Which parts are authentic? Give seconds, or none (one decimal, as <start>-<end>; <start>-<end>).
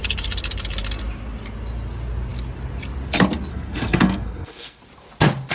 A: 0.0-3.5; 4.8-5.5